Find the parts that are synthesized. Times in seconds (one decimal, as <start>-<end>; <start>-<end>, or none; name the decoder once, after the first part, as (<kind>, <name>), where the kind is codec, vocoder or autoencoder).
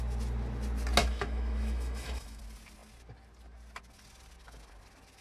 1.0-2.4 (autoencoder, DAC-VAE)